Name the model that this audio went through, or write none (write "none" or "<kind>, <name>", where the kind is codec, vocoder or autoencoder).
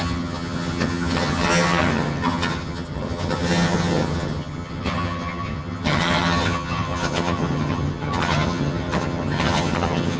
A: vocoder, HiFi-GAN